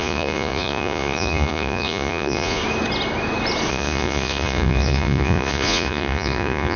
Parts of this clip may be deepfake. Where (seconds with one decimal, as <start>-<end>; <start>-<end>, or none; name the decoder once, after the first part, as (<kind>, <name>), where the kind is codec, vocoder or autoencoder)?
0.0-2.6 (vocoder, Vocos); 3.7-6.8